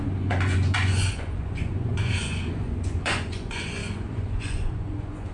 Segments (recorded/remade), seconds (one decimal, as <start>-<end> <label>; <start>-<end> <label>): 0.0-5.3 remade